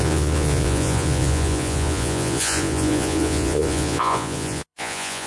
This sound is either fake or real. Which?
fake